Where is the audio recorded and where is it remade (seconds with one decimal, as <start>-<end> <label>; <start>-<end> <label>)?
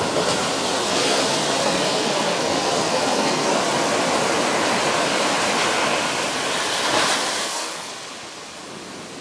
0.0-0.7 recorded; 0.7-3.6 remade; 3.6-7.4 recorded; 7.4-7.9 remade; 7.9-9.2 recorded